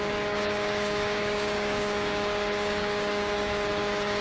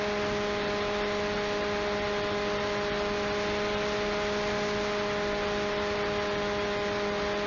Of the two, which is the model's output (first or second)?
first